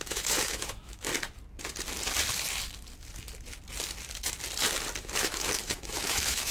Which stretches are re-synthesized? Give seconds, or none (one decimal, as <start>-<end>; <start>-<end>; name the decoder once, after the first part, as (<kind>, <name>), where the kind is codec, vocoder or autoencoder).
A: 0.0-1.1 (autoencoder, DAC-VAE); 5.0-6.5